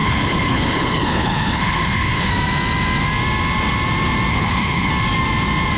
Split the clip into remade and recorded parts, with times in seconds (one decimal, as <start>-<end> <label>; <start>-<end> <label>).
0.0-2.3 remade; 2.3-4.3 recorded; 4.3-4.9 remade; 4.9-5.8 recorded